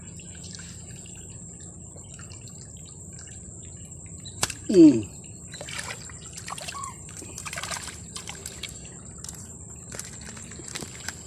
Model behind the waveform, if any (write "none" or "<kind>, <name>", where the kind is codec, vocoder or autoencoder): vocoder, BigVGAN v2